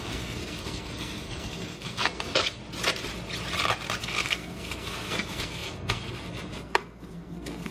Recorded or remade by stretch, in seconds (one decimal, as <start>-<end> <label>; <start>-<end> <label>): 0.0-2.6 remade; 2.6-4.0 recorded; 4.0-7.7 remade